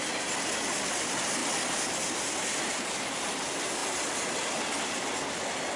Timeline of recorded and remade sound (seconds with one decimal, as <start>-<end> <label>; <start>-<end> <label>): 0.0-1.4 recorded; 1.4-2.7 remade; 2.7-5.8 recorded